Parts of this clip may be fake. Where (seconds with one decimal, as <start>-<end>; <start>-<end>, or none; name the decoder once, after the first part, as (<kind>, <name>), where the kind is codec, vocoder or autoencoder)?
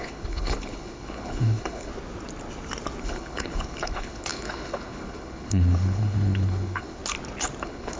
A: 0.0-1.9 (codec, HILCodec); 3.0-7.0; 7.6-8.0